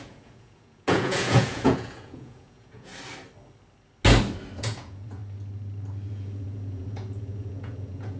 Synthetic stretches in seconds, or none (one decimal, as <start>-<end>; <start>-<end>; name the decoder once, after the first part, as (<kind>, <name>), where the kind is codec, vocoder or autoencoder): 0.0-2.9 (vocoder, Vocos); 4.6-5.2; 6.1-8.2